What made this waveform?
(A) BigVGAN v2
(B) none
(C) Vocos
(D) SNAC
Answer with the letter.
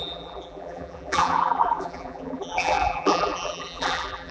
A